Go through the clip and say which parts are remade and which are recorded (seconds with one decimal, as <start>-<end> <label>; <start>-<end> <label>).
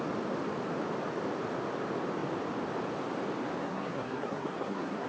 0.0-3.6 recorded; 3.6-5.1 remade